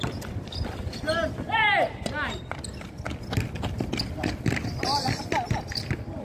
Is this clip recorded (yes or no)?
yes